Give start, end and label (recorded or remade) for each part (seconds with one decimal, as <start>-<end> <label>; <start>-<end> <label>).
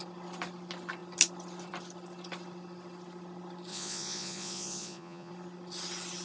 0.0-3.7 recorded; 3.7-5.3 remade; 5.3-6.2 recorded